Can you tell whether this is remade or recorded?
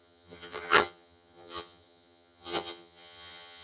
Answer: remade